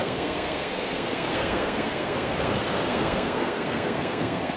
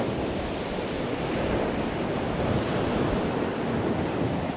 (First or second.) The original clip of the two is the second